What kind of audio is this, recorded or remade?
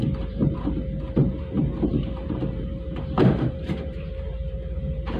remade